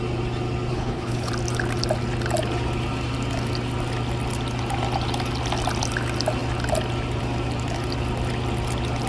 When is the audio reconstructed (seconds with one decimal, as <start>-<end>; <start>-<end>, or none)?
0.7-1.3

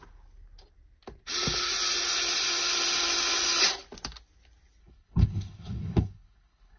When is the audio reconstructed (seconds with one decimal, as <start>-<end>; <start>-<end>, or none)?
4.8-6.8